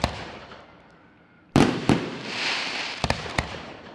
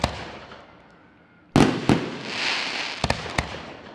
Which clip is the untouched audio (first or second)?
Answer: second